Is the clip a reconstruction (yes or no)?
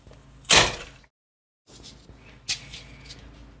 no